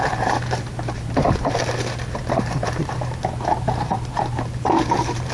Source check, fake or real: fake